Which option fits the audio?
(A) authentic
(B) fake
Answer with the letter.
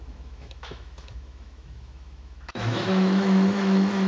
B